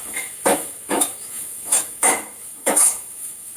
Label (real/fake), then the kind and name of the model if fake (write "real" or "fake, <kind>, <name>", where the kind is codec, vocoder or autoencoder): fake, autoencoder, DAC-VAE